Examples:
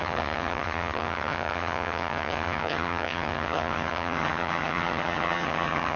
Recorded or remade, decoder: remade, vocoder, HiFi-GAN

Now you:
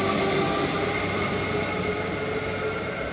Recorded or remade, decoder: recorded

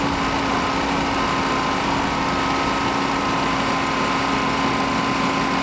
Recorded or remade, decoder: recorded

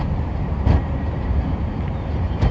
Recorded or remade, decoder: remade, vocoder, BigVGAN v2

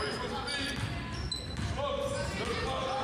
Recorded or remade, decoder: recorded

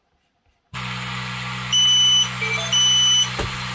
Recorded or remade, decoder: recorded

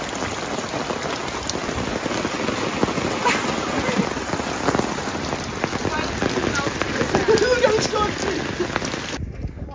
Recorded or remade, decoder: recorded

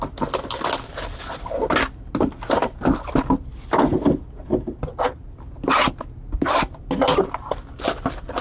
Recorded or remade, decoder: recorded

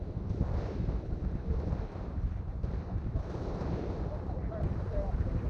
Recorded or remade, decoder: remade, vocoder, BigVGAN v2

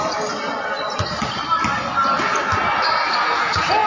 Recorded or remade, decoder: recorded